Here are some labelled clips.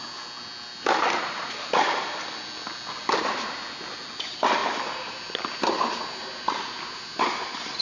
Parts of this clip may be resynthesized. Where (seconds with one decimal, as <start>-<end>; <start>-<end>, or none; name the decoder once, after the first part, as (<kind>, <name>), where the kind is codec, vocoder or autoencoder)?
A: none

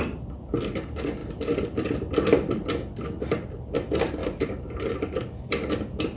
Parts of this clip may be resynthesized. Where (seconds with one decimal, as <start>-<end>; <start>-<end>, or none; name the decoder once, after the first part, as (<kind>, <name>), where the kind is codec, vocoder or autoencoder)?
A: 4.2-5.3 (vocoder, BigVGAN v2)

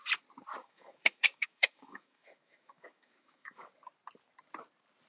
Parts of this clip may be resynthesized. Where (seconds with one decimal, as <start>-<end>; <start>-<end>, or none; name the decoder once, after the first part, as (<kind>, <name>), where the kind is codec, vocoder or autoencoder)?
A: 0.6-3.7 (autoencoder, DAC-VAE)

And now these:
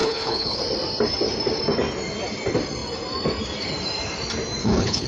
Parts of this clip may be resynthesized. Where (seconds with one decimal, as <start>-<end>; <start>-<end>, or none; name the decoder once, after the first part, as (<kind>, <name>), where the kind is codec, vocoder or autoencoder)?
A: 0.0-0.6 (codec, HILCodec); 4.6-5.1

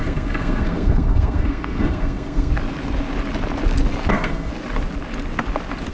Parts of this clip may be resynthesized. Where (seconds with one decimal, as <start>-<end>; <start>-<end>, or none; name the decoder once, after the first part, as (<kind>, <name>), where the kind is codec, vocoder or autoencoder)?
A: 0.0-2.5 (codec, SNAC); 4.1-4.5

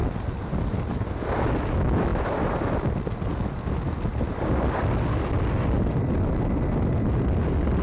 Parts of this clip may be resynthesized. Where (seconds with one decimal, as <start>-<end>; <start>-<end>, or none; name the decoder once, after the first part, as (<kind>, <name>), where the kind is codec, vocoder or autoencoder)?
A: none

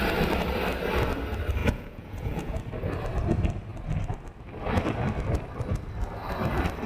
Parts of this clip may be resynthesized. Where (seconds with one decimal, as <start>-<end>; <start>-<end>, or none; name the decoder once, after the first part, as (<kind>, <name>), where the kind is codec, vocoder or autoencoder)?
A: 1.6-2.6 (vocoder, Vocos)

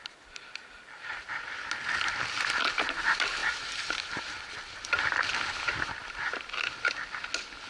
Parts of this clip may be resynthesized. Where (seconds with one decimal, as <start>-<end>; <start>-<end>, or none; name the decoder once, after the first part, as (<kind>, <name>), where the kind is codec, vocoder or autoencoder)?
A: 3.4-4.5 (vocoder, BigVGAN v2)